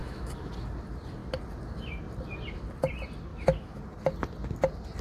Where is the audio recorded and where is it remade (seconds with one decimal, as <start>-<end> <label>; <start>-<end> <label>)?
0.0-0.5 remade; 0.5-3.3 recorded; 3.3-3.8 remade; 3.8-5.0 recorded